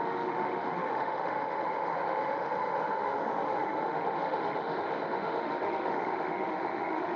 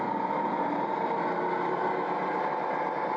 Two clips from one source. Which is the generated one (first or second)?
first